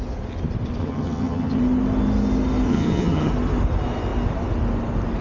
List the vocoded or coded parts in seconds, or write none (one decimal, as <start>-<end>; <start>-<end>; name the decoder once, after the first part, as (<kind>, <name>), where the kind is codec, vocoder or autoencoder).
0.8-1.6 (vocoder, HiFi-GAN); 2.7-3.3